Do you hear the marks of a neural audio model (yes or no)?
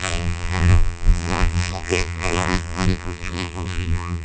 yes